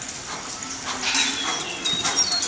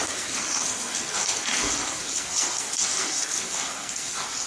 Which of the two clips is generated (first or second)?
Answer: second